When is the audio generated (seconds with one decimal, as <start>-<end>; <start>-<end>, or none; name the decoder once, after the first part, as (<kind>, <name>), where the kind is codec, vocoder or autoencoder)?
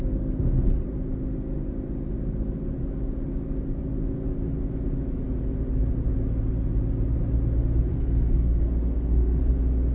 7.9-9.4 (codec, SNAC)